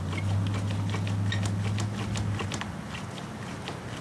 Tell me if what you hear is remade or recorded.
recorded